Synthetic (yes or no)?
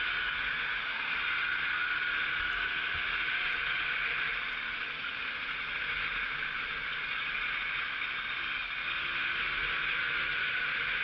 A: no